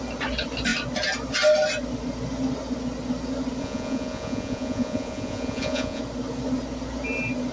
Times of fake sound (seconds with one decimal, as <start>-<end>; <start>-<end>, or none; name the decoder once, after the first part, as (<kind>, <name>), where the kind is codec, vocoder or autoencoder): 3.6-6.0 (vocoder, Vocos)

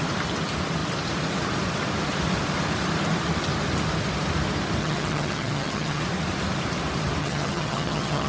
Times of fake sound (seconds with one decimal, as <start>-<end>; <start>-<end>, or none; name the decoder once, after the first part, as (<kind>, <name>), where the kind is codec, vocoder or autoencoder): 4.8-6.0 (vocoder, HiFi-GAN); 7.2-8.3

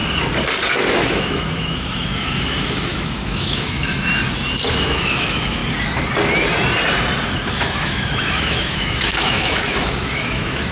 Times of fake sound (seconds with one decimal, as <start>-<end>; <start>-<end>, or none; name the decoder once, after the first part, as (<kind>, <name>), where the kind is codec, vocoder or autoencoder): 1.1-4.2 (autoencoder, DAC-VAE); 4.7-5.6; 7.5-10.7